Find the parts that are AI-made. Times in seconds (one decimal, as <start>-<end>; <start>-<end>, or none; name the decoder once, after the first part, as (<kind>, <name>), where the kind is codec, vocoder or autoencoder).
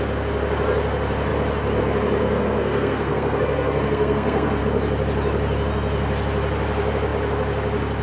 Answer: 2.2-4.6 (codec, SNAC)